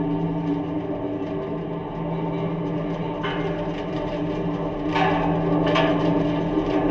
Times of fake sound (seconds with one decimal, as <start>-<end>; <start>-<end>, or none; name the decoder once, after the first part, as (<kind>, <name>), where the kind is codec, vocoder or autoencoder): none